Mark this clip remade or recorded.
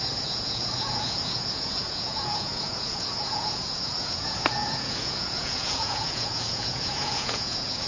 remade